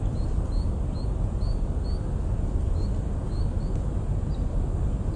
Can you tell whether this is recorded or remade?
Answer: recorded